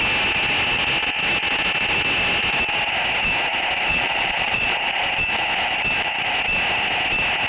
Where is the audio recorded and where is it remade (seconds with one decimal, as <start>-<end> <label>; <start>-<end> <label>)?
0.0-3.9 recorded; 3.9-5.1 remade; 5.1-7.5 recorded